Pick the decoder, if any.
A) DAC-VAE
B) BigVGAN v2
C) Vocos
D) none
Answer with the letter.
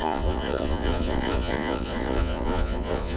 C